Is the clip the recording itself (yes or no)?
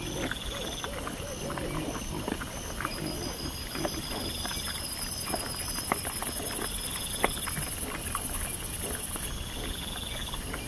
yes